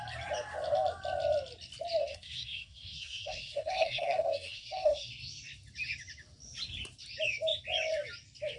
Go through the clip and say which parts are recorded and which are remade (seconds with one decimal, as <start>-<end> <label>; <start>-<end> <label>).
0.0-2.0 recorded; 2.0-5.1 remade; 5.1-8.6 recorded